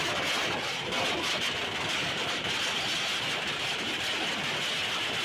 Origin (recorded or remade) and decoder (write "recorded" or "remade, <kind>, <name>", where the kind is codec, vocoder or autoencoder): recorded